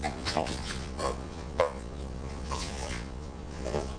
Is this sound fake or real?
fake